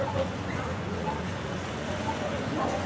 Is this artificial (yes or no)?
yes